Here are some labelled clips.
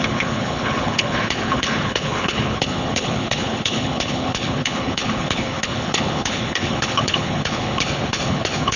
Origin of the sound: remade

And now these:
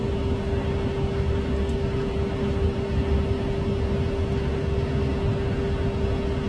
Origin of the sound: recorded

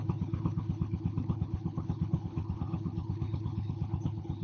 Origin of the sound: remade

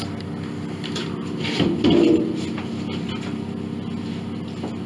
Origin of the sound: recorded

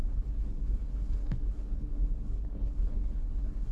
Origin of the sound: remade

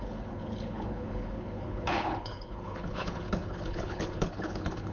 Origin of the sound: remade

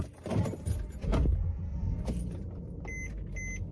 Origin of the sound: recorded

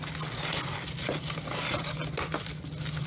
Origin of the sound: recorded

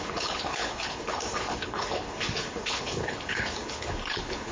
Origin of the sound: remade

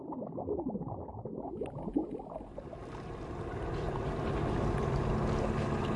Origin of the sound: recorded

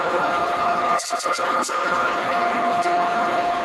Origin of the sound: remade